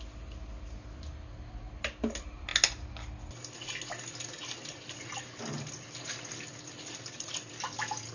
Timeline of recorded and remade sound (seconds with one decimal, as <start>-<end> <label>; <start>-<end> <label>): 0.0-8.1 recorded